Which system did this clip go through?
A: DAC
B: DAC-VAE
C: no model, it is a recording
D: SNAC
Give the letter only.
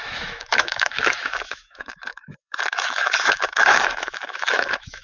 B